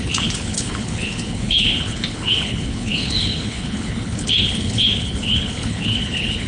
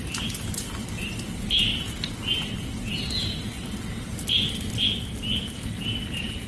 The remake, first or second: first